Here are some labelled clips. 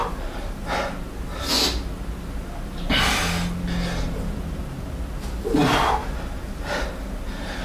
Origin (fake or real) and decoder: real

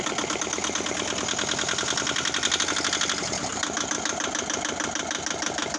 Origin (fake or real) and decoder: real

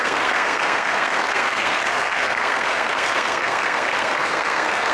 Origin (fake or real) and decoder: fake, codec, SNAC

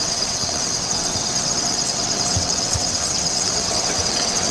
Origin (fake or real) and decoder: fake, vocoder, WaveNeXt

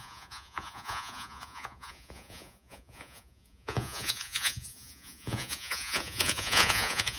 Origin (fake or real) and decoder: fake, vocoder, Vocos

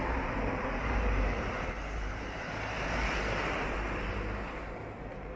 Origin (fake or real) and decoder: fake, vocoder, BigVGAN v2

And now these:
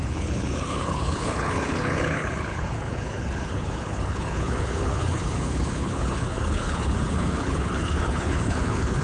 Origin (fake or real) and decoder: fake, codec, HILCodec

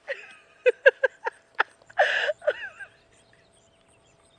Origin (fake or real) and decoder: real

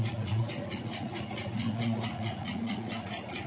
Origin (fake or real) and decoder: fake, vocoder, Vocos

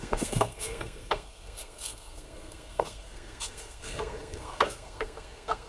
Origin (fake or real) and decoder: fake, codec, SNAC